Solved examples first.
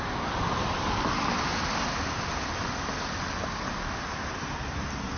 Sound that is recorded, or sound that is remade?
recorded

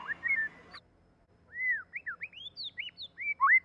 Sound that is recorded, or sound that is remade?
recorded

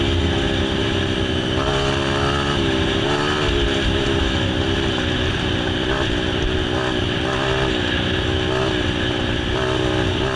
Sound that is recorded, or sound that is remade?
recorded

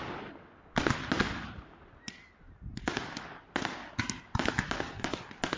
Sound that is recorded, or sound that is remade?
recorded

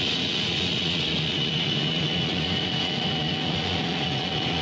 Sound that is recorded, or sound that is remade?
remade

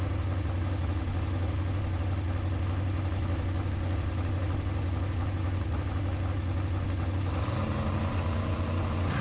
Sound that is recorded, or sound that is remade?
recorded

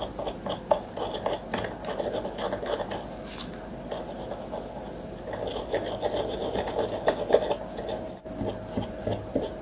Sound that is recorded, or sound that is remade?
recorded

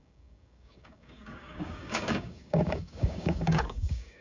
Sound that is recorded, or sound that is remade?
remade